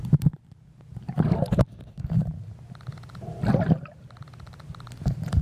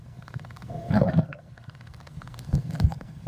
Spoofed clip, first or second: second